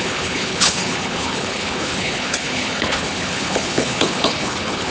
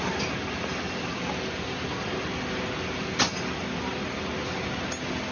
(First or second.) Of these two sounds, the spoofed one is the first